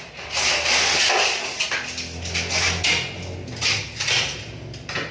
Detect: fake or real real